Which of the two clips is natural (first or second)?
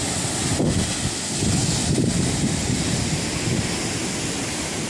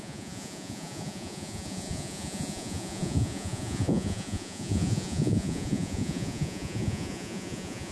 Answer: first